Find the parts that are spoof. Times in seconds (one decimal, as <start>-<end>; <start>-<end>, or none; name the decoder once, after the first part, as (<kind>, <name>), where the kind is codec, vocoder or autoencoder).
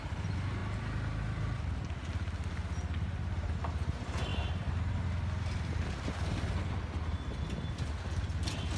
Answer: none